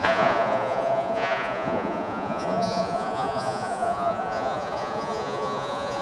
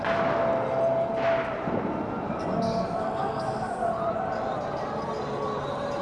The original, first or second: second